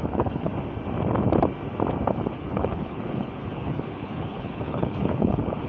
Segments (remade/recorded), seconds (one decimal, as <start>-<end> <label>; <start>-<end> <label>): 0.0-0.5 remade; 0.5-2.1 recorded; 2.1-5.7 remade